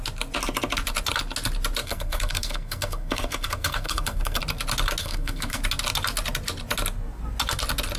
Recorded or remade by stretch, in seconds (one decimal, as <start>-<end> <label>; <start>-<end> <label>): 0.0-1.8 recorded; 1.8-4.4 remade; 4.4-5.0 recorded; 5.0-5.6 remade; 5.6-8.0 recorded